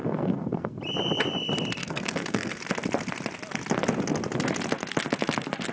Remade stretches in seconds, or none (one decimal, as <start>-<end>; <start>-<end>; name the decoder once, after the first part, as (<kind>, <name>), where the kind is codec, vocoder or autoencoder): 0.0-0.8 (codec, SNAC); 1.8-2.6